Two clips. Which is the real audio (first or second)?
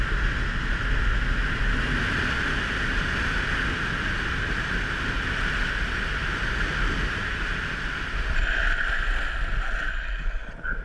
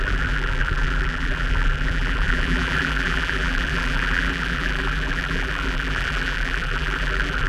first